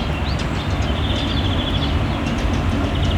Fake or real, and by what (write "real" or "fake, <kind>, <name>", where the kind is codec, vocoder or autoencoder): real